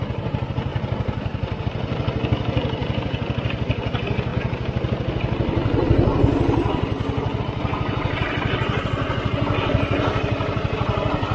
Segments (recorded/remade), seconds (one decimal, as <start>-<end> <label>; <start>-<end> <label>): 0.0-0.7 recorded; 0.7-1.6 remade; 1.6-2.8 recorded; 2.8-3.4 remade; 3.4-11.3 recorded